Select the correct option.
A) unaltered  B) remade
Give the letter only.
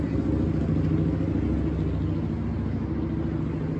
A